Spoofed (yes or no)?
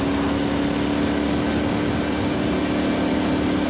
no